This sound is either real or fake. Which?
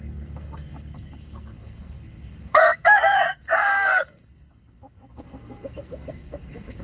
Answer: fake